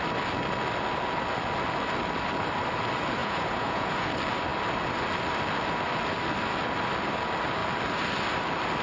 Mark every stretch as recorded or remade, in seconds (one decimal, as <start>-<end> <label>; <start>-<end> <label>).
0.0-3.2 recorded; 3.2-4.1 remade; 4.1-8.8 recorded